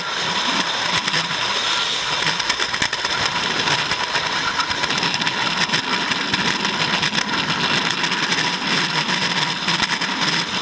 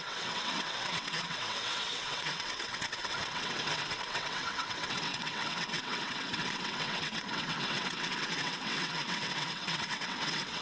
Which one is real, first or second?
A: first